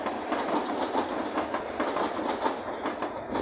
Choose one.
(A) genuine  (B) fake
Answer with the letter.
A